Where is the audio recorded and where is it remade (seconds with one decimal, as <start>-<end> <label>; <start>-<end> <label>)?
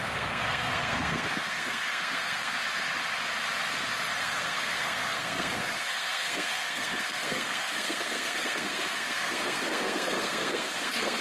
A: 0.0-2.6 remade; 2.6-4.2 recorded; 4.2-11.2 remade